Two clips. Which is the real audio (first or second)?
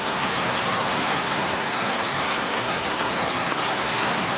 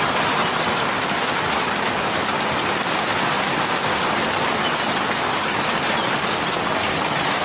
second